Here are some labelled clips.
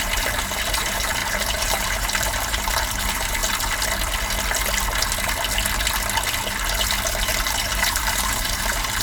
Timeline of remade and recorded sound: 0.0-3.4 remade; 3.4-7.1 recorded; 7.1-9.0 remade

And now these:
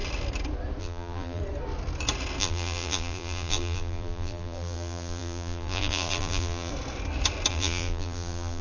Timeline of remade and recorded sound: 0.0-0.8 recorded; 0.8-1.4 remade; 1.4-2.4 recorded; 2.4-6.7 remade; 6.7-7.5 recorded; 7.5-8.6 remade